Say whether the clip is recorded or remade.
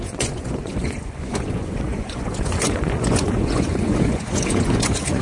remade